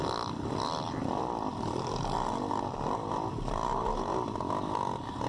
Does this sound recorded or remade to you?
recorded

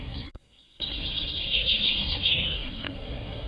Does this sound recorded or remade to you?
remade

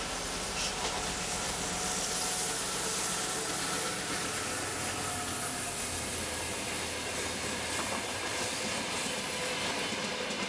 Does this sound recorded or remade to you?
recorded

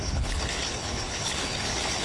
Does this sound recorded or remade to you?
remade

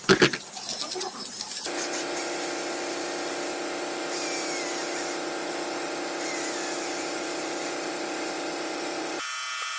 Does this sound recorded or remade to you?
recorded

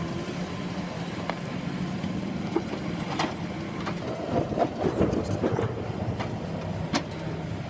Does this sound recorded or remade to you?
recorded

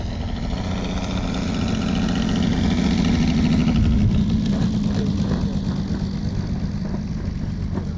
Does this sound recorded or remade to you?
recorded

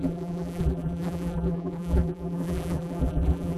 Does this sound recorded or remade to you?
remade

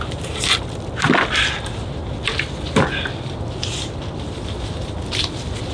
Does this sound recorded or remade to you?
recorded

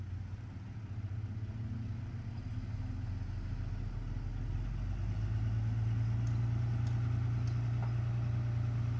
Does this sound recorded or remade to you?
recorded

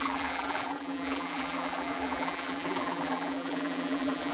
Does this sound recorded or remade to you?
remade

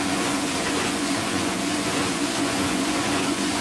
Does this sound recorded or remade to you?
remade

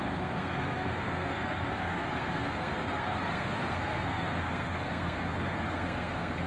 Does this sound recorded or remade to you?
remade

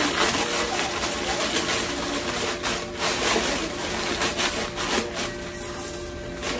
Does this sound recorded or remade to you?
recorded